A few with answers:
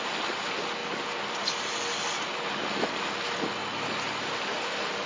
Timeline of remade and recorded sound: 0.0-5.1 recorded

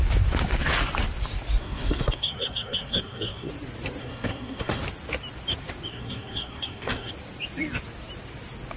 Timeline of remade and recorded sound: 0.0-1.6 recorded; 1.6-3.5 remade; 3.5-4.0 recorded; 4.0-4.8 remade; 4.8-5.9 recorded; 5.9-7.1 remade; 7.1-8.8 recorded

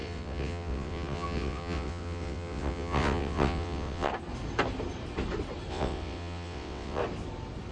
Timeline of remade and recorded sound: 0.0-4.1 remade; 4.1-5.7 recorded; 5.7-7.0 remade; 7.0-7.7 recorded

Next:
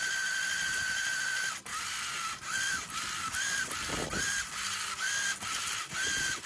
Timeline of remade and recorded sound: 0.0-6.5 recorded